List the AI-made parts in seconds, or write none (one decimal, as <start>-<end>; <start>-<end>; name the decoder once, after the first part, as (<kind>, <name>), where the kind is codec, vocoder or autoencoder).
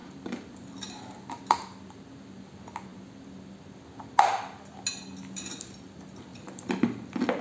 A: 0.0-2.5 (vocoder, BigVGAN v2); 6.3-7.4